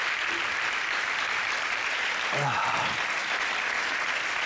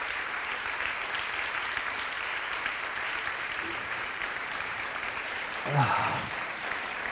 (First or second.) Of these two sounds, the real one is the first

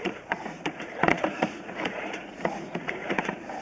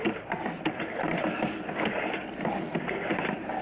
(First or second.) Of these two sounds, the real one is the second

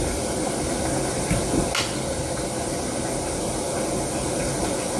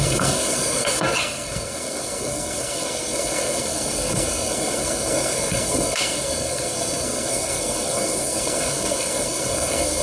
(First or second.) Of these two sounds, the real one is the first